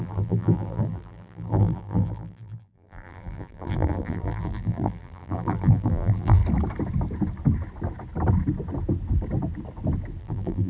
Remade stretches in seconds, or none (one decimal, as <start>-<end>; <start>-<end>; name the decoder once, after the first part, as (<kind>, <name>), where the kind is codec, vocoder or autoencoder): 0.0-6.4 (vocoder, BigVGAN v2); 10.2-10.7